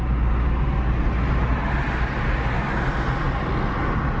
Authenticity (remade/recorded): recorded